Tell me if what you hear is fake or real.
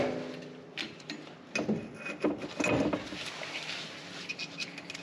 real